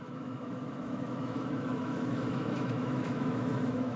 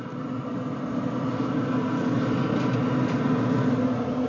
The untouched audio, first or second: second